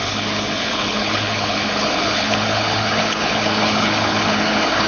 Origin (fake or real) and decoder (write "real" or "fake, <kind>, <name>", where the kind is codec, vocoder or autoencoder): fake, codec, HILCodec